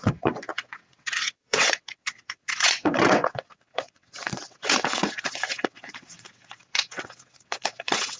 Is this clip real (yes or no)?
no